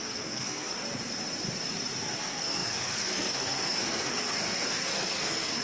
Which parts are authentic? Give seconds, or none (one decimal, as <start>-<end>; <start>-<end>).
0.7-2.2